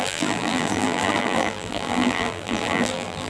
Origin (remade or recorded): remade